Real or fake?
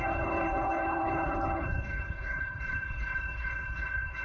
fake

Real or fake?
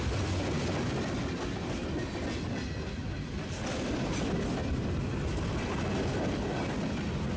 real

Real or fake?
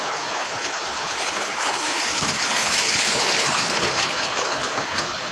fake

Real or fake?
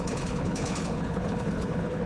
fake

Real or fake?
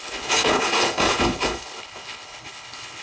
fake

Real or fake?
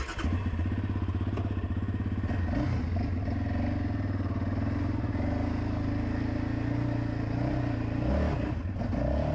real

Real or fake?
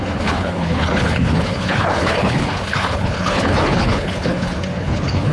fake